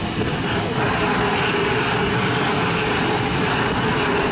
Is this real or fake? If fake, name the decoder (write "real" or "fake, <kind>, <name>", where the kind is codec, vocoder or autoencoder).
real